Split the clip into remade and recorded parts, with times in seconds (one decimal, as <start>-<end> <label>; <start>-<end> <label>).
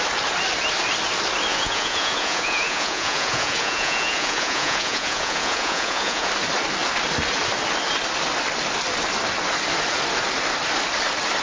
0.0-1.5 recorded; 1.5-6.3 remade; 6.3-11.4 recorded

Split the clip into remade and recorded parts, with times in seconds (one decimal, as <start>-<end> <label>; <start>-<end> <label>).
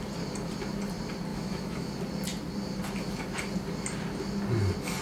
0.0-1.3 recorded; 1.3-1.9 remade; 1.9-5.0 recorded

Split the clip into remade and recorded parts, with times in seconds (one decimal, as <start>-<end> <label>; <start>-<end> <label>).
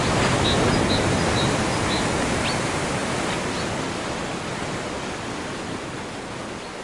0.0-6.8 recorded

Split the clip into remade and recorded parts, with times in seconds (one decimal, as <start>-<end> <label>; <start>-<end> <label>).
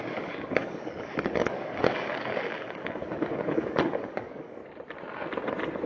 0.0-4.6 remade; 4.6-5.9 recorded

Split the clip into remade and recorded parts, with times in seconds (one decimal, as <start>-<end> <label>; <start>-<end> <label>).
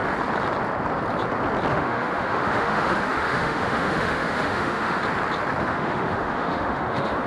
0.0-1.7 recorded; 1.7-5.0 remade; 5.0-5.6 recorded; 5.6-7.3 remade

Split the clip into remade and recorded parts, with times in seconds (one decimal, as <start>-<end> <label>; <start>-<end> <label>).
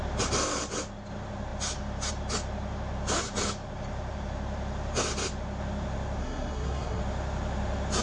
0.0-6.2 recorded; 6.2-7.0 remade; 7.0-8.0 recorded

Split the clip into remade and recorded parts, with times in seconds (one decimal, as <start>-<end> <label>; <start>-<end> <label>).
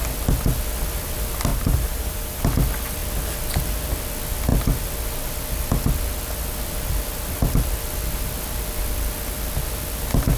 0.0-1.5 recorded; 1.5-2.4 remade; 2.4-10.4 recorded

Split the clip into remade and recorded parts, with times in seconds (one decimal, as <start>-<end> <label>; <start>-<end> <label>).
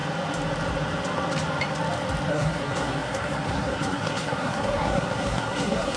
0.0-2.3 recorded; 2.3-6.0 remade